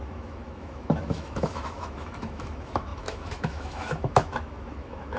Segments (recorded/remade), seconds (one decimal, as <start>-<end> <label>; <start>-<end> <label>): 0.0-5.2 remade